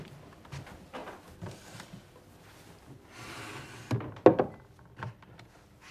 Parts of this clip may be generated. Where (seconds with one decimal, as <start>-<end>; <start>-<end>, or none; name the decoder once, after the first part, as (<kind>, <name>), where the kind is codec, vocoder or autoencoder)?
none